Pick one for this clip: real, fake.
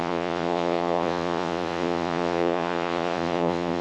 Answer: fake